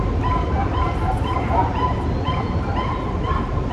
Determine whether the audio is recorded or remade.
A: recorded